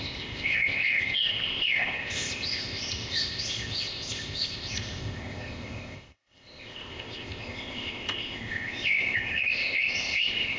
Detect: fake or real fake